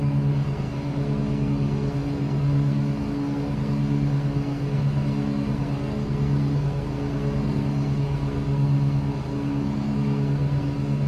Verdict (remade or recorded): remade